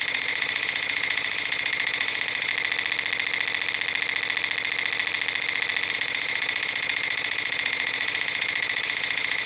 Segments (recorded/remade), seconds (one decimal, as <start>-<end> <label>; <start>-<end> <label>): 0.0-2.5 remade; 2.5-5.9 recorded; 5.9-9.5 remade